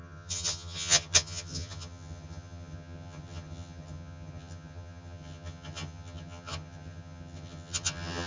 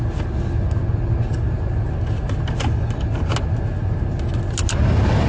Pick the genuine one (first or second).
second